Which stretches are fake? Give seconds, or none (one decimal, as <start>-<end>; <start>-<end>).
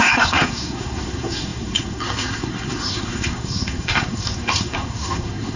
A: 0.0-5.6